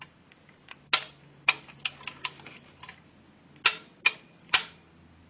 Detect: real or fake real